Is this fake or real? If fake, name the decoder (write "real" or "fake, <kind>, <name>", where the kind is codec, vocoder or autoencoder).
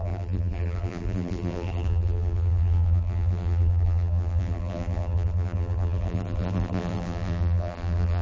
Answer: fake, vocoder, BigVGAN v2